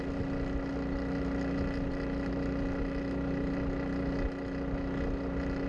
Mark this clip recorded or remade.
recorded